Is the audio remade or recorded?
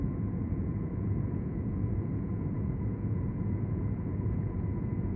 remade